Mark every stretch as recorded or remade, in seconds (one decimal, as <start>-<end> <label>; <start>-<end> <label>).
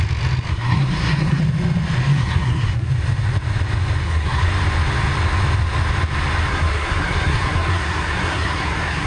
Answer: 0.0-0.5 recorded; 0.5-1.4 remade; 1.4-2.1 recorded; 2.1-2.9 remade; 2.9-4.0 recorded; 4.0-4.5 remade; 4.5-6.5 recorded; 6.5-9.1 remade